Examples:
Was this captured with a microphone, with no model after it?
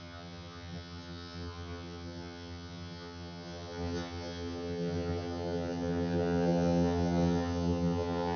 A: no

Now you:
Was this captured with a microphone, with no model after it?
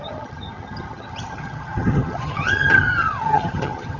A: no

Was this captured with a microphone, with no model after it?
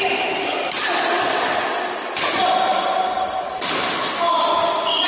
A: yes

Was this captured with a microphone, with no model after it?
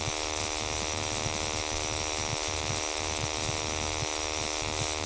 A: yes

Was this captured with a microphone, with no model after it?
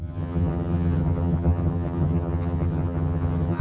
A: no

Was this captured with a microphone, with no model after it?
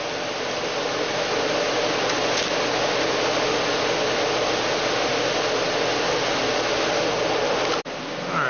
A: yes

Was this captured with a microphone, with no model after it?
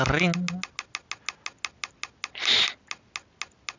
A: yes